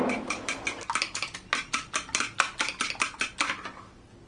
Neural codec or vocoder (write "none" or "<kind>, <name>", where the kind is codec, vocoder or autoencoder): none